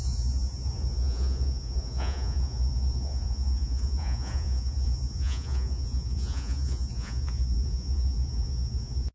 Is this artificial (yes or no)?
yes